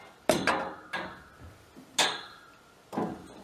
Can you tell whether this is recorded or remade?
recorded